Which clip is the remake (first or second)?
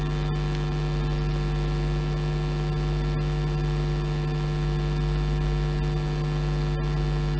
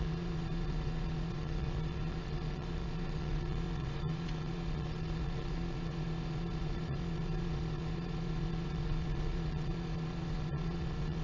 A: second